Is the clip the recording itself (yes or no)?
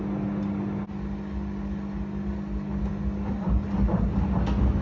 yes